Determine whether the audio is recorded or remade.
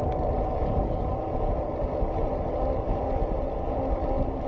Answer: recorded